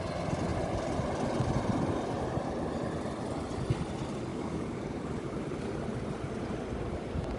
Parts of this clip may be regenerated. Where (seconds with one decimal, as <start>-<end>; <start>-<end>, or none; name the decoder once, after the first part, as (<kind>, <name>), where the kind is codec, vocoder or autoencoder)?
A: 4.3-5.5 (codec, DAC)